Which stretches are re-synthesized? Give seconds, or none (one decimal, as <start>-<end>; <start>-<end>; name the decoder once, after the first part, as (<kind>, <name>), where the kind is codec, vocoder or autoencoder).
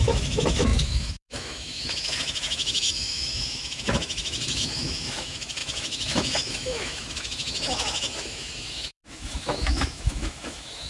0.0-10.9 (autoencoder, DAC-VAE)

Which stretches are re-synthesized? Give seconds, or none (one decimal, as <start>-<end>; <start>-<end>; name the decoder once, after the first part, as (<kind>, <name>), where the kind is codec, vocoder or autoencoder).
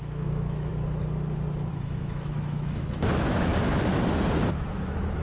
0.0-0.7 (autoencoder, DAC-VAE); 1.7-3.5; 4.5-5.2